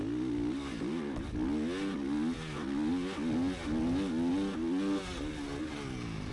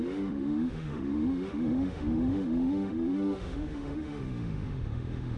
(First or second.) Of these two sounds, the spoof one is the second